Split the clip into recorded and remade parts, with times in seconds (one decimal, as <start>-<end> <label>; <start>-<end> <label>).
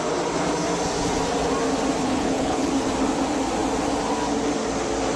0.0-2.0 recorded; 2.0-2.7 remade; 2.7-5.2 recorded